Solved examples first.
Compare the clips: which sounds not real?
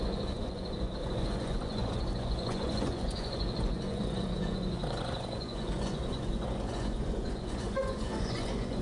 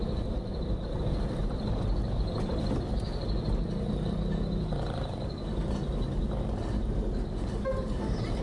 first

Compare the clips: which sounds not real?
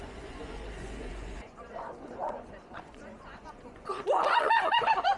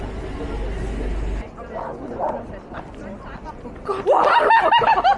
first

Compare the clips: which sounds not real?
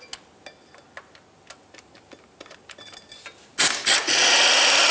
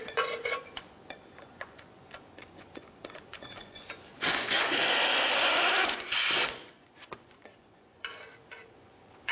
second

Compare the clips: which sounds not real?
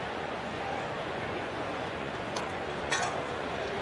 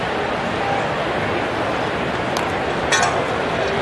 first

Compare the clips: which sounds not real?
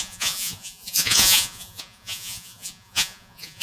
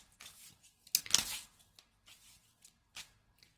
first